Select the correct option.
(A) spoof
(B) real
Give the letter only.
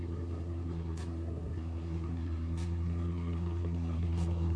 A